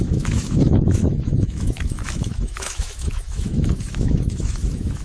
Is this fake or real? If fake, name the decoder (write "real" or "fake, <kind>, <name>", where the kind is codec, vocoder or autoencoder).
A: fake, autoencoder, DAC-VAE